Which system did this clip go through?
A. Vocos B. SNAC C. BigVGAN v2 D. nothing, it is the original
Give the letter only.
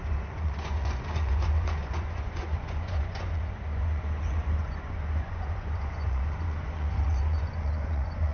A